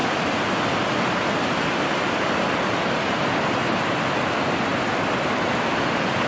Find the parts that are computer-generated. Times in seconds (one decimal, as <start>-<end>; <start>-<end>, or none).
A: none